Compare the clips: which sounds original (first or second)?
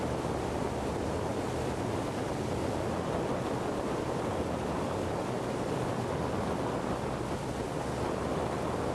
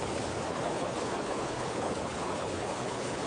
first